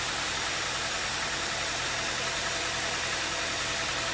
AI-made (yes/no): no